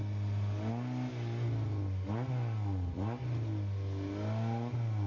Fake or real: real